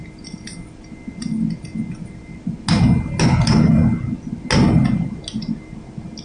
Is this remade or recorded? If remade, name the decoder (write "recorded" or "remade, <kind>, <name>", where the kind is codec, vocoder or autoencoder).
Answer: recorded